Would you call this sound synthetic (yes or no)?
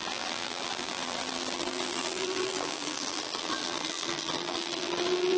yes